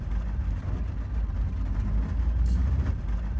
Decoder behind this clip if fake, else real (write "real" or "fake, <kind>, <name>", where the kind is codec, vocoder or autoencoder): real